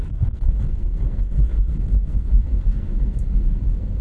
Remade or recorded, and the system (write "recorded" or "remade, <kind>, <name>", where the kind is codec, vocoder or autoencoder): remade, codec, SNAC